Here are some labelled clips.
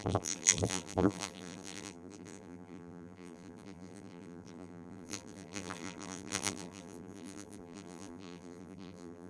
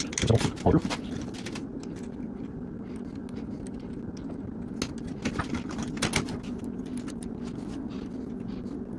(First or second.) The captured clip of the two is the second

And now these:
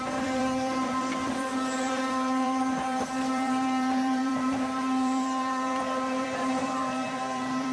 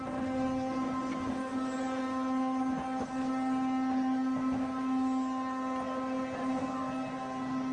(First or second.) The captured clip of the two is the second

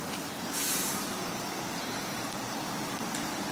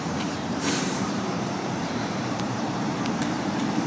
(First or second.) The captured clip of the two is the first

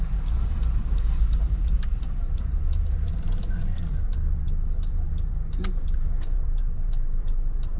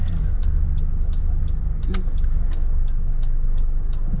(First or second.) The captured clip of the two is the second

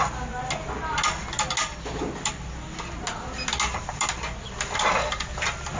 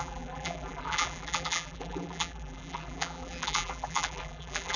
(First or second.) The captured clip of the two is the first